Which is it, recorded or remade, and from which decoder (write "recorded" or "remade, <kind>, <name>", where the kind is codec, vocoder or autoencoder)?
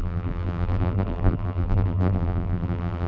remade, vocoder, BigVGAN v2